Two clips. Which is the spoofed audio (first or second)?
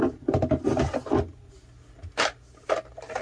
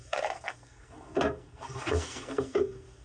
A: second